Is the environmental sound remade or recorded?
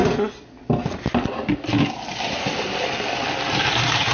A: recorded